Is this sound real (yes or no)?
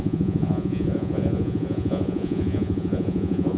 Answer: no